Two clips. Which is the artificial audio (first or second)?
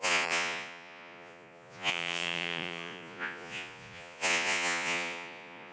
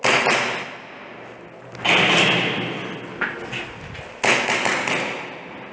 first